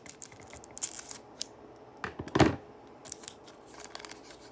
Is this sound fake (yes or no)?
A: no